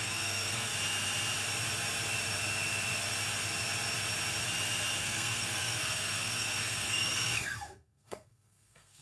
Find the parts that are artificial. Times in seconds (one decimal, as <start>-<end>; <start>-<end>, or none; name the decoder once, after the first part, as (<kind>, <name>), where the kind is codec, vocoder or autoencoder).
0.0-0.7 (codec, SNAC); 5.0-9.0